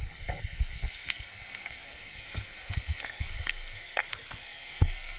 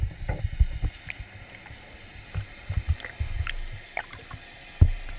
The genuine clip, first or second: second